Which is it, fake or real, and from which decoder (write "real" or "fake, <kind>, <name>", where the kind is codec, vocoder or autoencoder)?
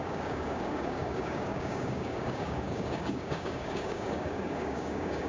fake, codec, DAC